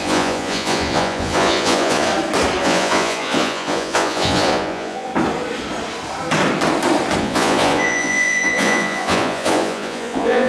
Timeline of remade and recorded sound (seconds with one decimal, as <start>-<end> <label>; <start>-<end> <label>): 0.0-2.1 remade; 2.1-2.6 recorded; 2.6-5.1 remade; 5.1-7.2 recorded; 7.2-10.5 remade